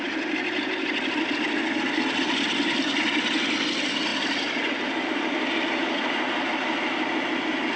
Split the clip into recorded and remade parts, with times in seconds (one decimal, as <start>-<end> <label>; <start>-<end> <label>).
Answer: 0.0-7.8 recorded